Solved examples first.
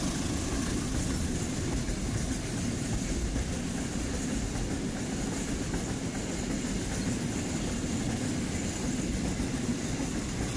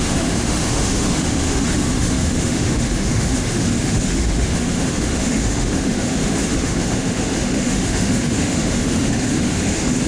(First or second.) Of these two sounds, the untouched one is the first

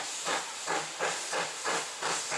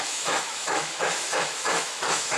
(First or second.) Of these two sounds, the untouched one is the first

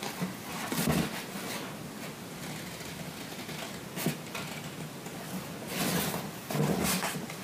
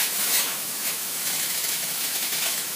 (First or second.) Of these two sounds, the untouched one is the first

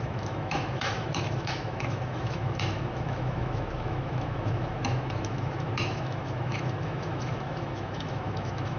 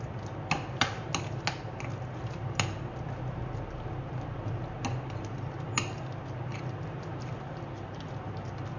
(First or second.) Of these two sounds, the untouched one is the second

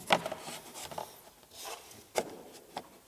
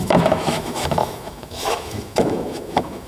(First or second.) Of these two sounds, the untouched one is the first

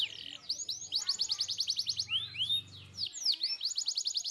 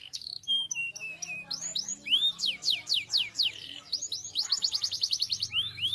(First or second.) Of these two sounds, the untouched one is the first